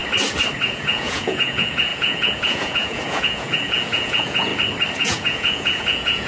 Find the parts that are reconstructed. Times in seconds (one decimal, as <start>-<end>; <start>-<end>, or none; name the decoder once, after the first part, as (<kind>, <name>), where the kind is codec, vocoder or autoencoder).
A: 0.6-4.5 (vocoder, Vocos); 5.0-6.3